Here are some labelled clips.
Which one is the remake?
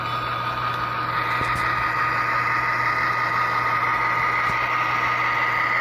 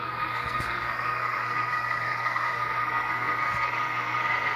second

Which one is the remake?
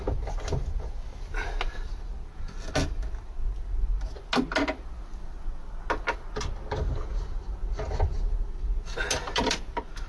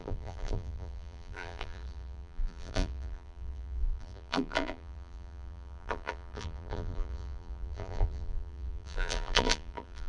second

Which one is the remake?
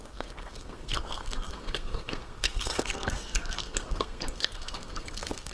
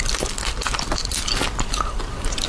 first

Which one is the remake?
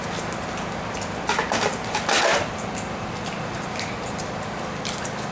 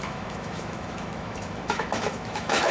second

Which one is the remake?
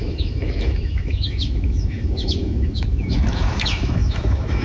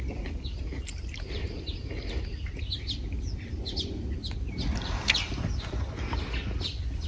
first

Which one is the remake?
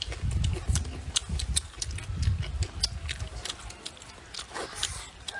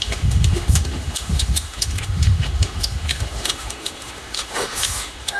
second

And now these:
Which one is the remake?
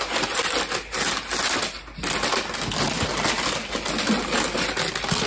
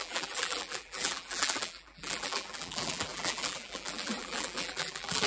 second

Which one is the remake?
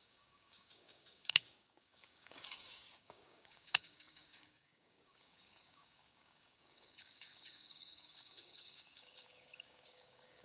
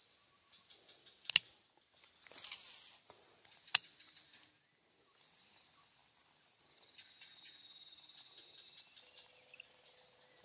first